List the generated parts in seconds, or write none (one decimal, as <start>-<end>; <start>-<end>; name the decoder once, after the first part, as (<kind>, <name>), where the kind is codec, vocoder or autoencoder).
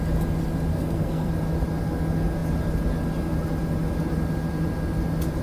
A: 0.7-1.3 (codec, SNAC)